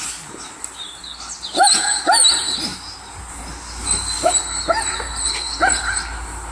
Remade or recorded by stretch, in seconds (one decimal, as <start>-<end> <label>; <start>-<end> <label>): 0.0-6.5 recorded